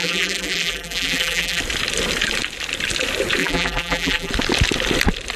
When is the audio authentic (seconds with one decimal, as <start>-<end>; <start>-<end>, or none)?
1.6-3.4; 4.3-5.4